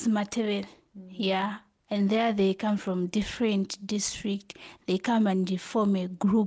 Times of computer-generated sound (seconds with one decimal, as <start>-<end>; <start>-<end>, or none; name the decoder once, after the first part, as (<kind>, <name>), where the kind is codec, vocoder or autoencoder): none